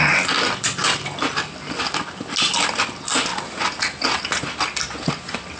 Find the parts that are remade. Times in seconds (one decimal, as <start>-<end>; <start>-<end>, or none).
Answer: none